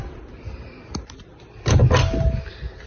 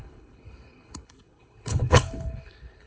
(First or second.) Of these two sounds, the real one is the first